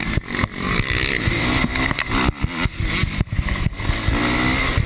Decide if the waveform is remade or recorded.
recorded